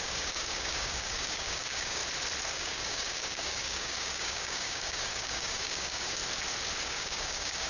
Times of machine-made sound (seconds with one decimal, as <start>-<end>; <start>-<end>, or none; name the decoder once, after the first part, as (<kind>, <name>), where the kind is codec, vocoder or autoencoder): 0.0-2.0 (codec, DAC); 2.5-6.2; 6.8-7.7